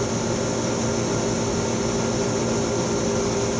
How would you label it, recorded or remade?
recorded